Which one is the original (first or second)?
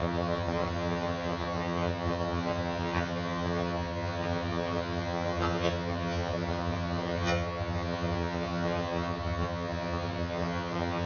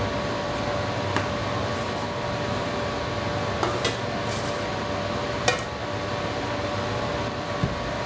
second